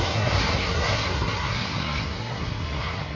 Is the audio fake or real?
fake